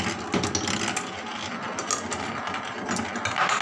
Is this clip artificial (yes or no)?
no